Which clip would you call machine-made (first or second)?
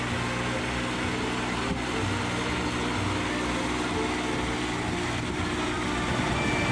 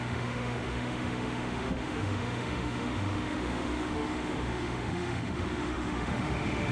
second